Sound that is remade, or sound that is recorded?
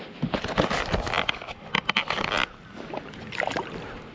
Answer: recorded